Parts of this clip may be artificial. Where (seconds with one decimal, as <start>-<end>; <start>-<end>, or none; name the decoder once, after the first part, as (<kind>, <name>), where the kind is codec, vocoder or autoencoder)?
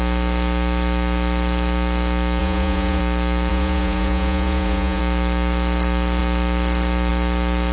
2.4-3.0 (vocoder, Vocos); 3.5-5.0